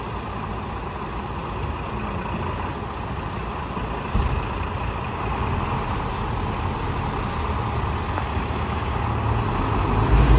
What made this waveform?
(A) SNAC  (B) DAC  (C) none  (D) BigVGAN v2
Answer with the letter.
C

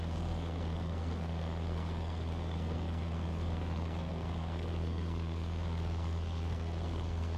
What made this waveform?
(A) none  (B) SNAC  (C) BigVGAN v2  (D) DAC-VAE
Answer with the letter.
B